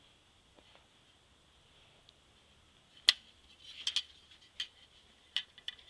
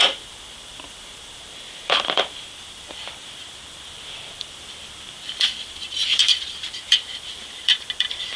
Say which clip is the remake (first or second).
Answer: second